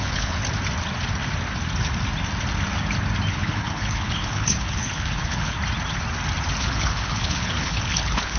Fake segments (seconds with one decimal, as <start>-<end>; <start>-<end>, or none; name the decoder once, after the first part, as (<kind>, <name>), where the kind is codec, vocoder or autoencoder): 0.0-0.4 (codec, HILCodec); 3.3-5.6; 6.6-8.4